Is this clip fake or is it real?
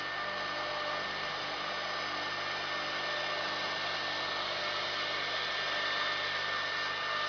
real